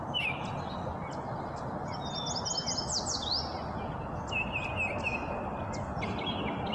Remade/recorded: recorded